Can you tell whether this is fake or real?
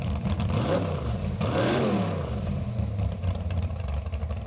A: fake